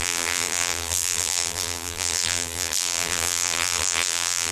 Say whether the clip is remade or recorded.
remade